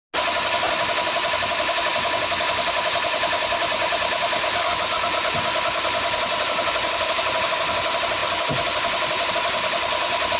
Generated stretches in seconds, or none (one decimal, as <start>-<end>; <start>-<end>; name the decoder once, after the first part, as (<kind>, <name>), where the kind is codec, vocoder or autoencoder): none